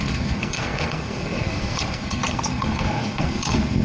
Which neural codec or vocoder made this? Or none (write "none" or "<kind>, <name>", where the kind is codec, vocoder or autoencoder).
codec, SNAC